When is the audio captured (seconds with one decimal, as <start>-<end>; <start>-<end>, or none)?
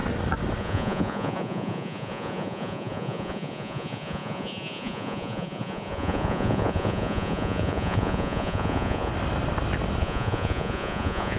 0.0-0.6; 9.1-10.0